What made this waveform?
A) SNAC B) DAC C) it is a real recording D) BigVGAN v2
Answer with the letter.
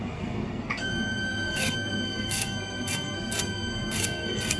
A